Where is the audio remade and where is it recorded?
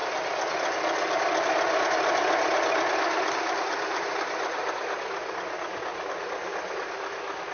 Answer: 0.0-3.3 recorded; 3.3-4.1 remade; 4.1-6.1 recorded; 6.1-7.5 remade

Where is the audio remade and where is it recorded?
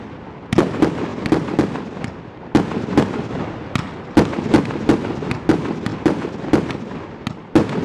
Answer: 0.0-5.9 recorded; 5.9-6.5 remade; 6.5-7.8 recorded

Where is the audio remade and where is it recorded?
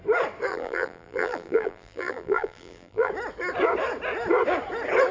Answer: 0.0-0.5 recorded; 0.5-3.1 remade; 3.1-5.1 recorded